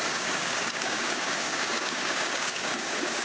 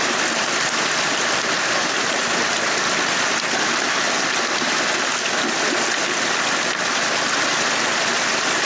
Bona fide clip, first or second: second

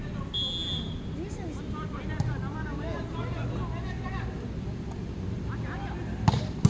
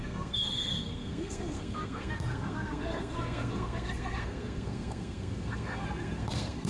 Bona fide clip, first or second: first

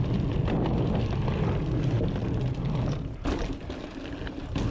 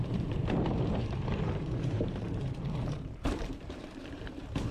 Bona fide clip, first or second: first